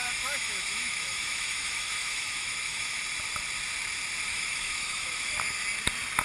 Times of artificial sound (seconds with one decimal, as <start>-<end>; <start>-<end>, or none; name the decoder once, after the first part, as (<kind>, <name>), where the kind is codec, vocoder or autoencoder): 0.0-3.0 (autoencoder, DAC-VAE); 4.3-5.4